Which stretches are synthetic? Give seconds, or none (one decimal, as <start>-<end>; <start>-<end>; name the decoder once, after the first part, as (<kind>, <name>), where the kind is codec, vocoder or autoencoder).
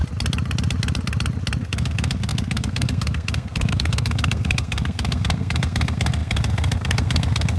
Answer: 1.6-7.6 (codec, SNAC)